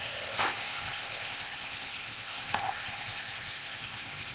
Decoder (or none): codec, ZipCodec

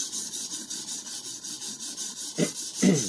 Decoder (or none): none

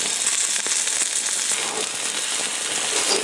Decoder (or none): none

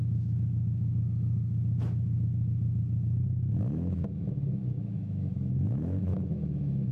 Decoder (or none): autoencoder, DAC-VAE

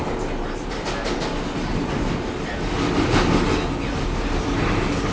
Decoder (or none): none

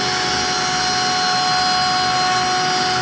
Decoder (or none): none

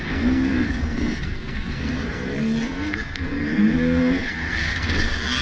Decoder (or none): codec, SNAC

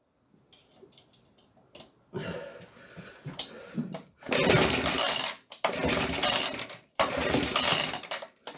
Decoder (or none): none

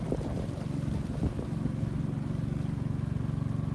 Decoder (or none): none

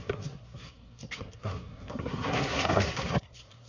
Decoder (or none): codec, SNAC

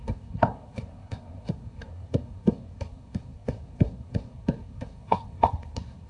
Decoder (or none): codec, SNAC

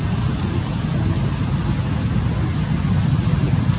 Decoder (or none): none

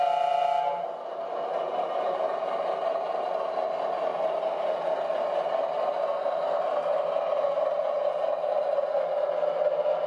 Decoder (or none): none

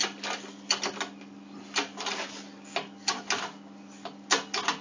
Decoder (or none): none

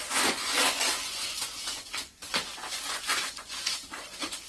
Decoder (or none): vocoder, Vocos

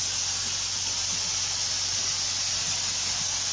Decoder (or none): none